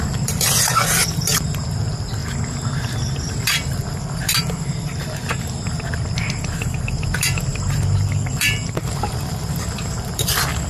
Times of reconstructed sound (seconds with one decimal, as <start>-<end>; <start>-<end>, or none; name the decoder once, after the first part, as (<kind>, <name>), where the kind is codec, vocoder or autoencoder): 0.0-10.7 (vocoder, BigVGAN v2)